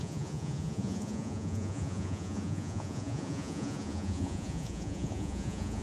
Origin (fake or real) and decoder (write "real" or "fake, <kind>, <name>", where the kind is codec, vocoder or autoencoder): fake, vocoder, Vocos